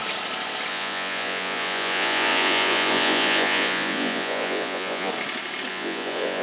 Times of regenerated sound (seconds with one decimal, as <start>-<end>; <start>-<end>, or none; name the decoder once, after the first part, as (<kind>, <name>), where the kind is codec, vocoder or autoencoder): 0.7-5.1 (vocoder, Vocos); 5.7-6.4